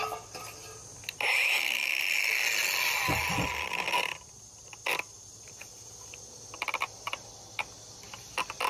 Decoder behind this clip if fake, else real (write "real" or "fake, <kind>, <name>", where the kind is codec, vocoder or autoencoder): real